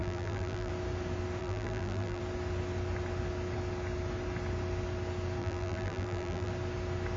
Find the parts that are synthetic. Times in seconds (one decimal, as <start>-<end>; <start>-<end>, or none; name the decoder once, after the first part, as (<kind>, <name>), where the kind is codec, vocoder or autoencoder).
0.0-0.7 (vocoder, BigVGAN v2); 1.4-2.2; 5.4-6.5